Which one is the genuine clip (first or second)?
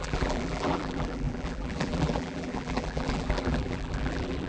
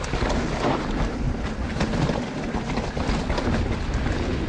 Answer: second